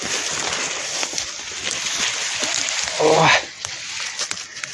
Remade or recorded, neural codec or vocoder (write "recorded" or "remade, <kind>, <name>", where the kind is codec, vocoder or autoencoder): recorded